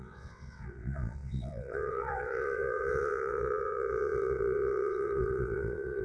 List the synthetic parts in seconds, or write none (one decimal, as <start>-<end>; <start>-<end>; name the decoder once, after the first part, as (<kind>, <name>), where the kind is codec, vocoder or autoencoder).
0.0-6.0 (vocoder, WaveNeXt)